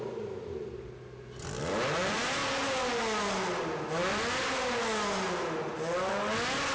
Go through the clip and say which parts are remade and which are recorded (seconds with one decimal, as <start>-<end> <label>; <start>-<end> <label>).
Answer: 0.0-6.7 recorded